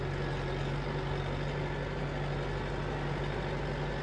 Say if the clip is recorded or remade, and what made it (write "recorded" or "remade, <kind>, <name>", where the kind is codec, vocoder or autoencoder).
recorded